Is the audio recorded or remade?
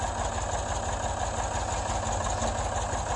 recorded